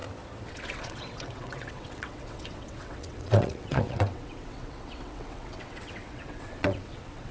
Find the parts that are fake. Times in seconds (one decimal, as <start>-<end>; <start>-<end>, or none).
0.5-7.3